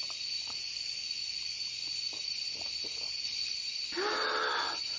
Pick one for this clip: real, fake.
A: real